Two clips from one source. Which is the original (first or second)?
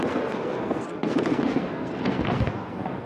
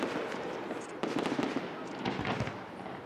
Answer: second